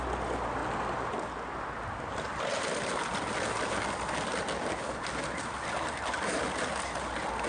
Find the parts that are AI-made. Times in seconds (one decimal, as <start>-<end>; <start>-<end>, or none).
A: none